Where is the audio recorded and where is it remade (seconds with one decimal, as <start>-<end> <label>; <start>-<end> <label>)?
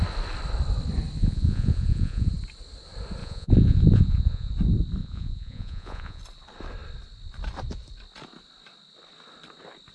0.0-1.2 recorded; 1.2-2.3 remade; 2.3-3.2 recorded; 3.2-4.5 remade; 4.5-5.0 recorded; 5.0-6.2 remade; 6.2-9.9 recorded